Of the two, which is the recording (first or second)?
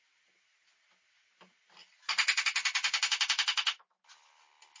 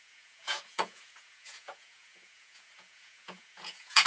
first